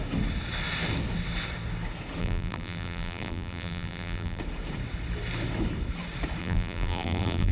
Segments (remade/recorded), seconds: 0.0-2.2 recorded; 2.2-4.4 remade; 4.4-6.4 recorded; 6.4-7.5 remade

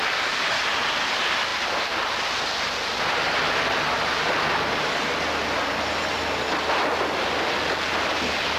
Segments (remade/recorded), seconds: 0.0-8.6 recorded